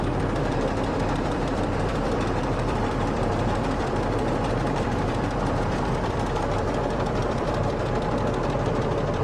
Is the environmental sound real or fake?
fake